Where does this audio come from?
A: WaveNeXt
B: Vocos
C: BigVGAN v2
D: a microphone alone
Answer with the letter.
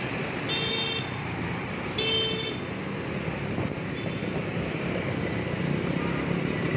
D